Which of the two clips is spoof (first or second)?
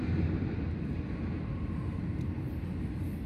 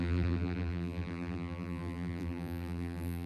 second